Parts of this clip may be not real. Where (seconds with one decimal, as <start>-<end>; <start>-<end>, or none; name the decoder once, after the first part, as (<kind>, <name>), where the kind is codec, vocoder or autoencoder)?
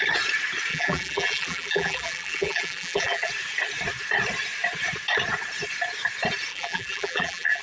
0.7-3.3 (vocoder, BigVGAN v2); 6.5-7.6